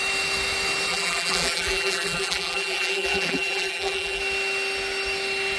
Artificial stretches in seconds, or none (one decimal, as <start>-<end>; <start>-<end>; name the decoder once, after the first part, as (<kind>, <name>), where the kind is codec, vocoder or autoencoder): 0.9-4.2 (vocoder, BigVGAN v2)